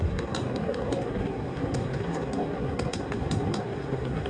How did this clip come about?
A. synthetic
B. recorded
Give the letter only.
A